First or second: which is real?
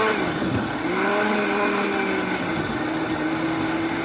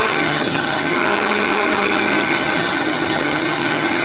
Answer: first